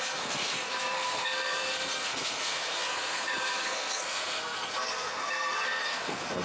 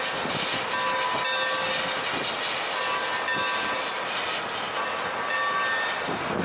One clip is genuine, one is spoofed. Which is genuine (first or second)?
second